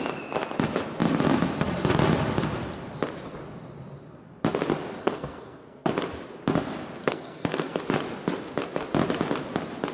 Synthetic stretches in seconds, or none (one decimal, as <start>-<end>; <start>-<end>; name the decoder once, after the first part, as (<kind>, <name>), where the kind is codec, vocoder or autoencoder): 5.0-5.9 (codec, SNAC); 7.0-7.8

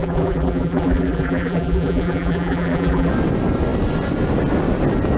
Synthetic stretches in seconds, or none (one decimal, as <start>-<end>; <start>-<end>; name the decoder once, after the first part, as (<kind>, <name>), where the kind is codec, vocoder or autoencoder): 0.0-3.1 (vocoder, BigVGAN v2)

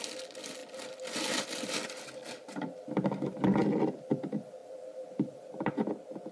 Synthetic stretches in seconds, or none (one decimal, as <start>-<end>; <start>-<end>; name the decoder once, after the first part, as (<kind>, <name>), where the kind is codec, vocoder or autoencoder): 0.6-2.6 (vocoder, BigVGAN v2); 4.6-5.7

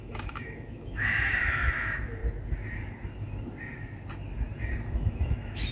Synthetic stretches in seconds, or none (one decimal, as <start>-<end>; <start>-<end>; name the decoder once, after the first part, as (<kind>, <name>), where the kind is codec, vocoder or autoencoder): 0.0-2.2 (autoencoder, DAC-VAE); 4.9-5.7

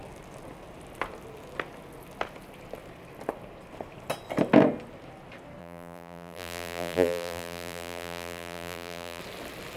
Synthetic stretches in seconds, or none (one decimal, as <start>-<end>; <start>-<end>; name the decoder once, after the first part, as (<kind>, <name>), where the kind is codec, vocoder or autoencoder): 5.6-9.2 (vocoder, BigVGAN v2)